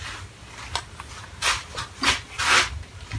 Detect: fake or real real